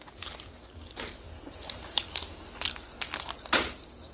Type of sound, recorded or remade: recorded